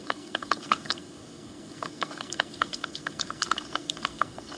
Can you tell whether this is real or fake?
fake